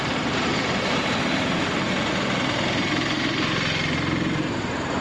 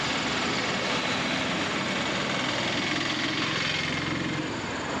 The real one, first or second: second